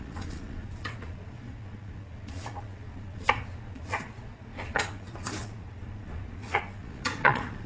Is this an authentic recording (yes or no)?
no